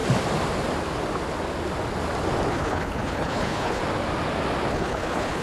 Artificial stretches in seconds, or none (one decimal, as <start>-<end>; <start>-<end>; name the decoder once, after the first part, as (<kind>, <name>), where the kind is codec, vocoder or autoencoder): 2.5-3.8 (codec, HILCodec); 4.7-5.4

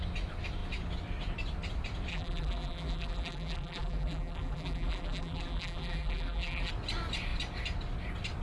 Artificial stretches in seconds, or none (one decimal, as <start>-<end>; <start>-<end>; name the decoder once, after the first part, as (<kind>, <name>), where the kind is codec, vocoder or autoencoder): 2.1-6.7 (vocoder, BigVGAN v2)

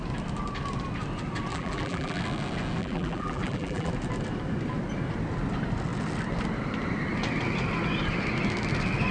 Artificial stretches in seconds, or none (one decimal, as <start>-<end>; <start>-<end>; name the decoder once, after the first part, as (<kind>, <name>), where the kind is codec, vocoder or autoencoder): 1.5-2.2 (vocoder, BigVGAN v2); 2.8-3.9

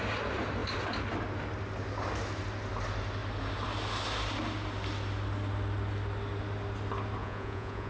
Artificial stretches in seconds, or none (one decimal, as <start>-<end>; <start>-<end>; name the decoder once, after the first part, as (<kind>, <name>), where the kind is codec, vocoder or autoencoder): 7.2-7.9 (vocoder, Vocos)

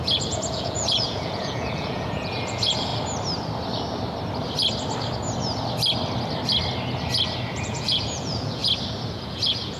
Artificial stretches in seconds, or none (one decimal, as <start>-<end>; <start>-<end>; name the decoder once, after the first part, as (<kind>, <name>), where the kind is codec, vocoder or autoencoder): 0.0-2.9 (vocoder, Vocos); 7.6-8.6; 9.1-9.8

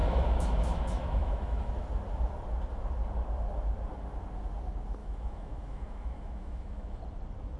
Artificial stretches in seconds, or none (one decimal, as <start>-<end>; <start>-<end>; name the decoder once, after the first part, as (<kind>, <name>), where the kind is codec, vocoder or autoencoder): 0.0-1.7 (autoencoder, DAC-VAE); 5.0-7.0